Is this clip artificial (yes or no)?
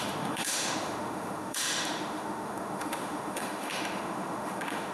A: yes